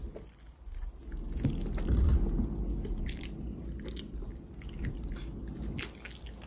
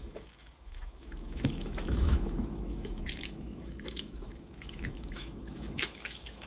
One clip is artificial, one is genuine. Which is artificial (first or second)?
second